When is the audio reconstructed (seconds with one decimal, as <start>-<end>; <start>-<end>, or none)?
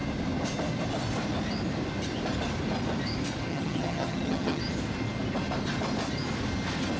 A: 3.5-4.6